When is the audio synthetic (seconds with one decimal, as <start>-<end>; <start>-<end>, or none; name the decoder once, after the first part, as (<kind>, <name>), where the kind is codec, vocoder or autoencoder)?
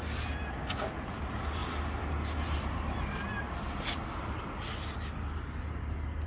none